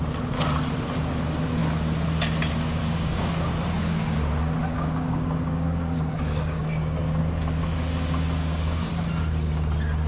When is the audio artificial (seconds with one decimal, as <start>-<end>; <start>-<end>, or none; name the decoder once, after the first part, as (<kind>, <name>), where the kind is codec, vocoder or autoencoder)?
2.8-3.3 (codec, DAC); 4.7-7.2; 8.4-8.9